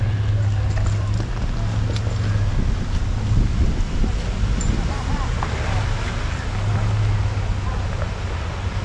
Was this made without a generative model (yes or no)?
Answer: yes